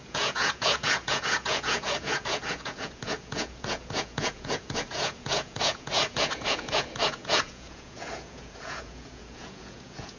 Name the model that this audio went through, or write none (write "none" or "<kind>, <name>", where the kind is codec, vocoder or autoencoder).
vocoder, Vocos